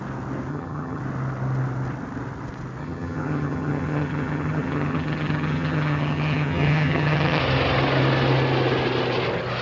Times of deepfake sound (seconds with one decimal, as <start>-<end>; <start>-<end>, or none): 0.5-1.0; 2.8-7.4